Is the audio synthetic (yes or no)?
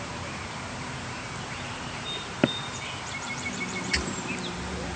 yes